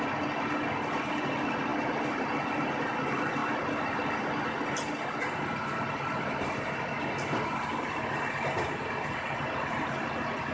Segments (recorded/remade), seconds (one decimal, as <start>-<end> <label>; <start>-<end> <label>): 0.0-10.5 recorded